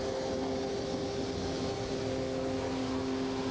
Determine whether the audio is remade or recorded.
recorded